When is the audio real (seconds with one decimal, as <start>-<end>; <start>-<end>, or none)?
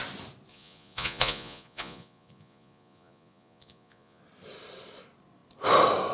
0.0-0.5; 4.2-6.1